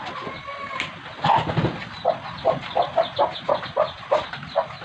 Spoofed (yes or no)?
no